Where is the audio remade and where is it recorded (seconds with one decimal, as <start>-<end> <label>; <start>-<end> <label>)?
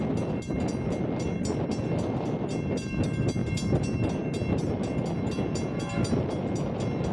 0.0-7.1 recorded